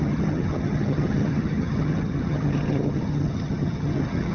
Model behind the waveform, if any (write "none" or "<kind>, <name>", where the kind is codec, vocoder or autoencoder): vocoder, HiFi-GAN